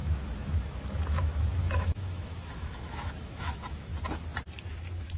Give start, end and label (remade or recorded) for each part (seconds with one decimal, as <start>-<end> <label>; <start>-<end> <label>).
0.0-3.9 remade; 3.9-4.7 recorded; 4.7-5.2 remade

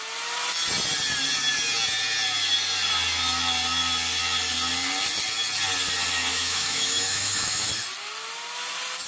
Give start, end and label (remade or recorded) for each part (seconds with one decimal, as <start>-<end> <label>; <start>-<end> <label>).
0.0-6.3 recorded; 6.3-7.7 remade; 7.7-9.1 recorded